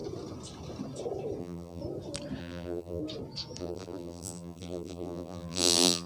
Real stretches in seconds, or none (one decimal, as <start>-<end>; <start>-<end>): 0.0-1.4; 1.8-2.4; 3.0-3.6